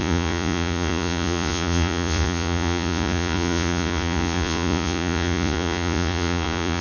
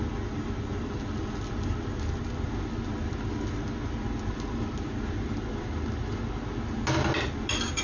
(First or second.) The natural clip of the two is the second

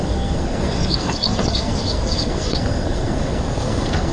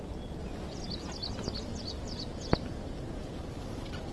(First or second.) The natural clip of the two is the second